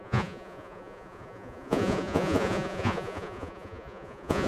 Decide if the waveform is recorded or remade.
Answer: remade